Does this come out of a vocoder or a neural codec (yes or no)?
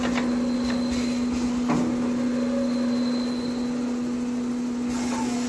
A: no